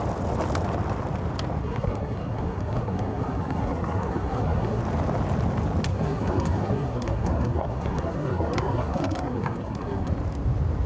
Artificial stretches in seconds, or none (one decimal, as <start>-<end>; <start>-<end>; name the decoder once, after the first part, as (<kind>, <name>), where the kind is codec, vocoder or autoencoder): 1.6-4.8 (codec, SNAC); 5.9-10.1